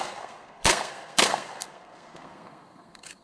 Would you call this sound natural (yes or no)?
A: no